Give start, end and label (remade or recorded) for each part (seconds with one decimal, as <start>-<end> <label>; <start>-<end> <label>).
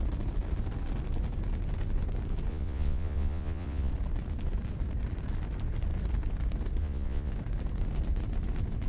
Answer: 0.0-2.5 recorded; 2.5-3.9 remade; 3.9-6.8 recorded; 6.8-7.3 remade; 7.3-8.9 recorded